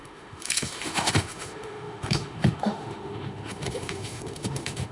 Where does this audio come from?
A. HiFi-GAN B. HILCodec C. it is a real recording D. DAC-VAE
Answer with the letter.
D